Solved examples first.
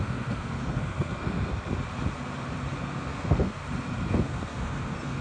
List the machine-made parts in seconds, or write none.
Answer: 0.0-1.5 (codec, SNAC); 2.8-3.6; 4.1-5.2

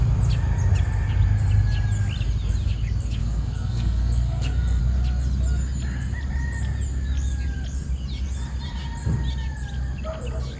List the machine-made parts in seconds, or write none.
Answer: 3.2-4.8 (codec, SNAC)

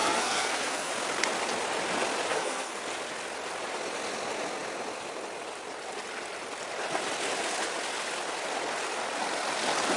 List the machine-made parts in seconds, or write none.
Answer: 0.0-0.9 (codec, SNAC); 2.3-2.8

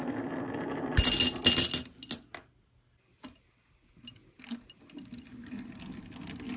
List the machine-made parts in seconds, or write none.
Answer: none

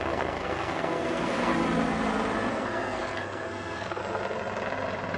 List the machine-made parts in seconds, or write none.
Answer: 0.0-1.5 (codec, SNAC); 2.5-4.0

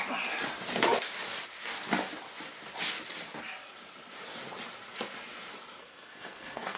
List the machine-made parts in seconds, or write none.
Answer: 5.8-6.8 (codec, SNAC)